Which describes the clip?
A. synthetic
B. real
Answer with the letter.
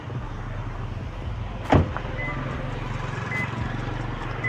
B